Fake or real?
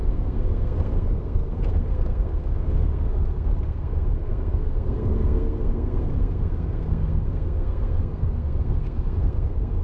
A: fake